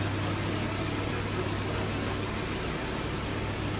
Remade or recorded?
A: recorded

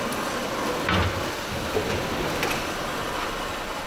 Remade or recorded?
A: recorded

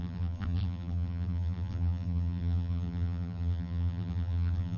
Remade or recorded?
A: remade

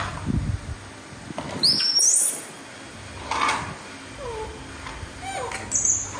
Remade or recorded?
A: recorded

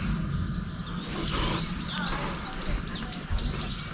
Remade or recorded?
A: recorded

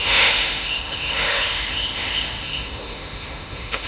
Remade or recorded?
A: remade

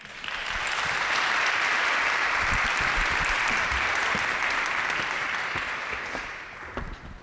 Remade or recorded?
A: recorded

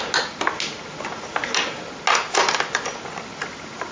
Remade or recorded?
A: recorded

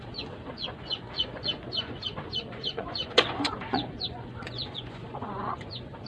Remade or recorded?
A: remade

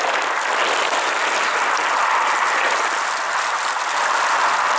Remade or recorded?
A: recorded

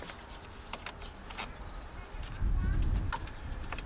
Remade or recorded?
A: recorded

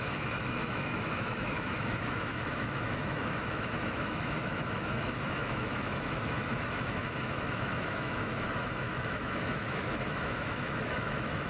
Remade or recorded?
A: remade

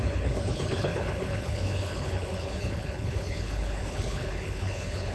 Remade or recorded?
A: remade